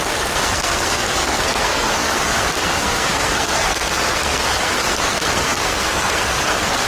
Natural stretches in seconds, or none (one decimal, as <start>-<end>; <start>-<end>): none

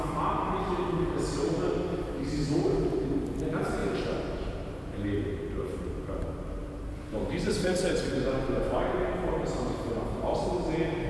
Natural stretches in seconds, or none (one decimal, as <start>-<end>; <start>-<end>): none

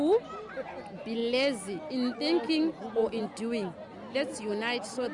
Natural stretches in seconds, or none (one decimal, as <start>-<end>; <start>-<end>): 0.0-5.1